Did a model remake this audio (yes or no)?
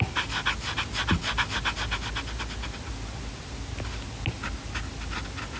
no